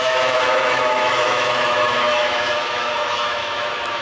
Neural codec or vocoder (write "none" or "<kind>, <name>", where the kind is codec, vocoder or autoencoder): autoencoder, DAC-VAE